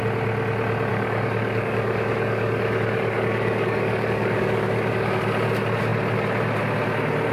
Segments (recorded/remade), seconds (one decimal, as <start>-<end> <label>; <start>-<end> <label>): 0.0-0.9 recorded; 0.9-5.2 remade; 5.2-7.3 recorded